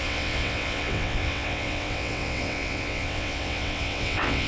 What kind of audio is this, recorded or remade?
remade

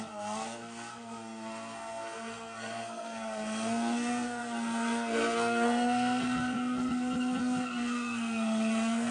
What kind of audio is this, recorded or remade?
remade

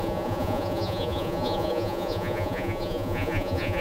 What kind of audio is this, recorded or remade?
remade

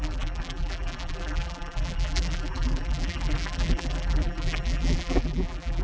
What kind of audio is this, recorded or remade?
remade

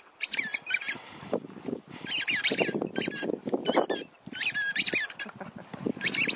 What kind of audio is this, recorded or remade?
recorded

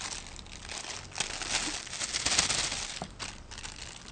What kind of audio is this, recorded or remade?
recorded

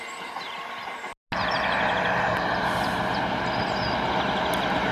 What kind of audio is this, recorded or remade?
recorded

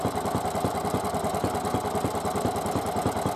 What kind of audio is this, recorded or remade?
recorded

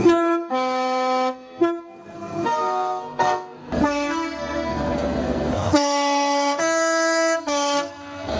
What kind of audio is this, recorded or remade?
remade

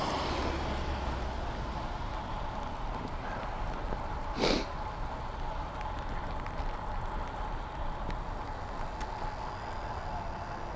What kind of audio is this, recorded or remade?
recorded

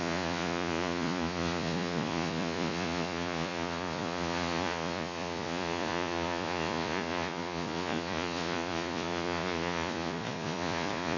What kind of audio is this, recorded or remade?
remade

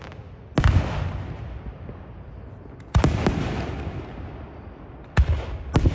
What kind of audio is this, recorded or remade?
recorded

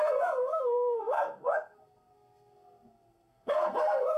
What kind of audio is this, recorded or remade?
remade